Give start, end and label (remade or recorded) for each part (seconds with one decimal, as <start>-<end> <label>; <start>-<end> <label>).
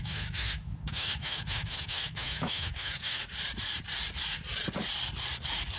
0.0-3.2 remade; 3.2-5.8 recorded